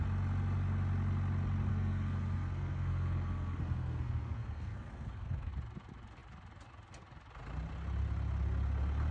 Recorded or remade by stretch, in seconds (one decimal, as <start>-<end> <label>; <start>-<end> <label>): 0.0-1.7 recorded; 1.7-5.5 remade; 5.5-9.1 recorded